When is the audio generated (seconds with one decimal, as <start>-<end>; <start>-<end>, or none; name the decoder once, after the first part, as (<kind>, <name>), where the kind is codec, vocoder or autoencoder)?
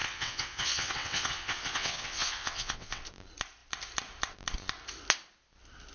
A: 0.0-3.0 (vocoder, WaveNeXt)